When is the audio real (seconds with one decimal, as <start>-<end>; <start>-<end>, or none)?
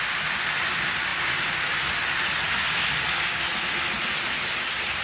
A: 0.0-5.0